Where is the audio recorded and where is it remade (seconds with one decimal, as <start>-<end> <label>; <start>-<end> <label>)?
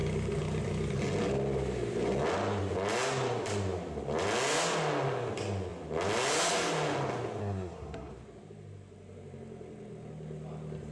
0.0-7.4 recorded; 7.4-8.1 remade; 8.1-10.9 recorded